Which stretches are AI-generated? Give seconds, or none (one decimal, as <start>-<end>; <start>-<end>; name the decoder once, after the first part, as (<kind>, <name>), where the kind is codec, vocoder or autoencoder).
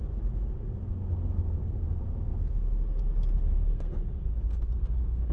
1.1-1.9 (codec, SNAC); 3.5-5.3